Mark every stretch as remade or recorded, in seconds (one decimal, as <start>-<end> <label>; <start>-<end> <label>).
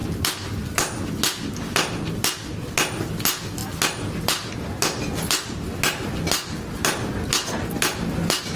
0.0-8.6 recorded